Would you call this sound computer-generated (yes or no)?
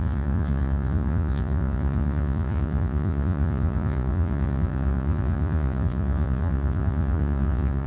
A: yes